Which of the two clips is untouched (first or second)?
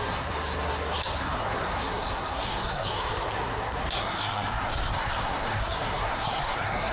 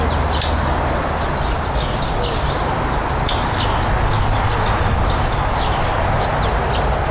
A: second